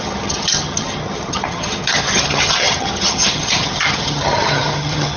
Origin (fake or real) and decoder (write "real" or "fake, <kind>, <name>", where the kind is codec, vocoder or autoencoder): fake, vocoder, HiFi-GAN